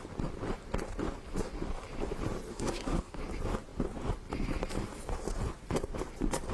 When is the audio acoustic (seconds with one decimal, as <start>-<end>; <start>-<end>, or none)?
0.0-2.5; 3.2-6.5